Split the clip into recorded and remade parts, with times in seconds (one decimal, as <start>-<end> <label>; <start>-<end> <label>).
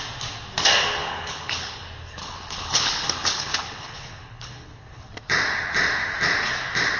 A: 0.0-1.0 recorded; 1.0-1.8 remade; 1.8-2.2 recorded; 2.2-5.1 remade; 5.1-7.0 recorded